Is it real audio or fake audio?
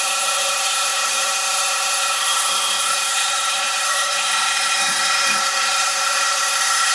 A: fake